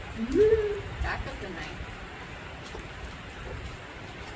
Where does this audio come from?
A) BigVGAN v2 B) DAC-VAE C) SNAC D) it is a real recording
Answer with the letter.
A